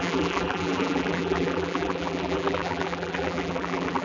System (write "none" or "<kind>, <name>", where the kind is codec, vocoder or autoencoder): vocoder, BigVGAN v2